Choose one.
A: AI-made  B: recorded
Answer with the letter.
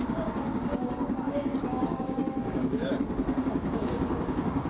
A